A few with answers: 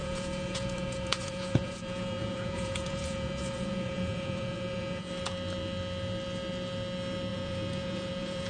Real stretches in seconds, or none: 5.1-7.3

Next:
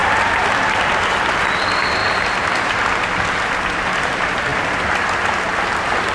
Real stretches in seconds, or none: 0.0-6.1

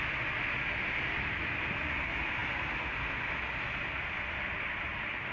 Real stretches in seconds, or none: 0.0-5.3

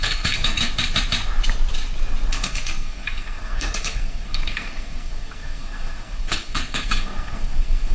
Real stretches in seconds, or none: 0.7-2.3

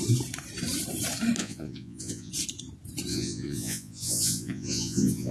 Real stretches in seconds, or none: 0.0-1.4; 2.3-3.1

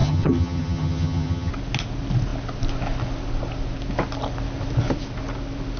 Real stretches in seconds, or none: 1.5-5.8

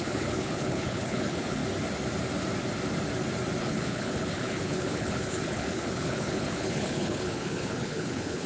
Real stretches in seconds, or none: 1.6-3.6

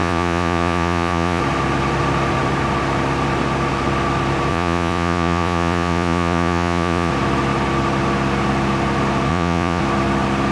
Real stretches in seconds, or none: 1.4-4.5; 7.1-9.3; 9.8-10.5